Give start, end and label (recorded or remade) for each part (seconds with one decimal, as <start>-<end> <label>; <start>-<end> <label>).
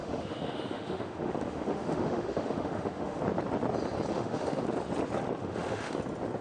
0.0-3.2 remade; 3.2-4.1 recorded; 4.1-4.6 remade; 4.6-5.4 recorded; 5.4-6.0 remade; 6.0-6.4 recorded